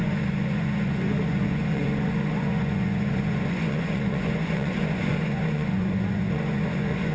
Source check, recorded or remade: remade